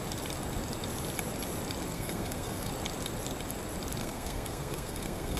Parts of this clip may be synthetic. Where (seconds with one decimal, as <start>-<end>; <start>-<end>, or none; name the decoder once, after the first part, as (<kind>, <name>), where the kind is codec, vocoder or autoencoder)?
1.9-2.7 (codec, SNAC); 4.0-5.4